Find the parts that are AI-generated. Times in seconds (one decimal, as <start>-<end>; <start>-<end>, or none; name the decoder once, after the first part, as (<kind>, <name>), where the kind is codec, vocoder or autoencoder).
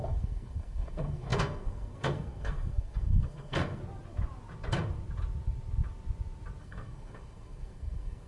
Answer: 0.0-3.8 (codec, SNAC); 6.6-8.3